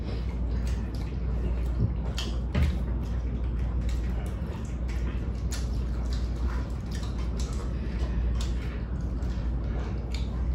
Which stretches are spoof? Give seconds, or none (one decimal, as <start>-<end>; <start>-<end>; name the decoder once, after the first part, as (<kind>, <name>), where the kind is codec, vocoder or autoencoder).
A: none